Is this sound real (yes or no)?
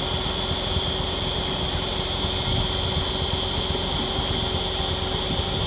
yes